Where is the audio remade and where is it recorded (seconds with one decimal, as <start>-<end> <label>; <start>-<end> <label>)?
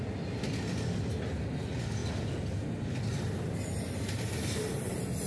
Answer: 0.0-5.3 recorded